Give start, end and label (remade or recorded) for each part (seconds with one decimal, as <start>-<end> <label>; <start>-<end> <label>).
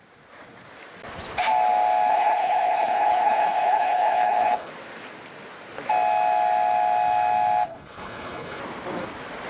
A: 0.0-2.1 recorded; 2.1-4.7 remade; 4.7-7.7 recorded; 7.7-8.6 remade; 8.6-9.5 recorded